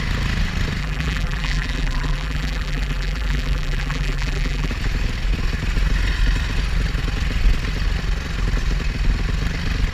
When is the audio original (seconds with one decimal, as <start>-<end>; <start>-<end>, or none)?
0.0-0.8; 4.7-9.9